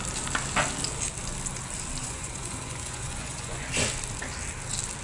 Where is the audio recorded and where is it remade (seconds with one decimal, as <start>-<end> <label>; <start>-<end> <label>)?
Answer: 0.0-2.0 recorded; 2.0-3.7 remade; 3.7-5.0 recorded